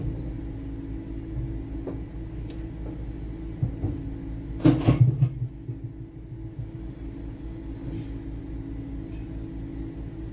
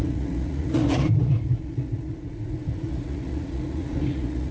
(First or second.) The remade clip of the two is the second